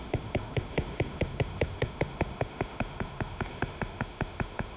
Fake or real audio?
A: fake